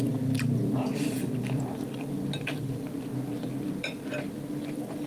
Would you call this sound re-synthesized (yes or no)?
yes